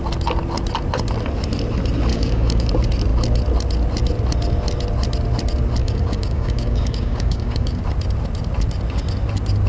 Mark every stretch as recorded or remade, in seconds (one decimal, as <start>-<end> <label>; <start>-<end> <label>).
0.0-2.1 recorded; 2.1-2.7 remade; 2.7-5.8 recorded; 5.8-7.8 remade; 7.8-9.7 recorded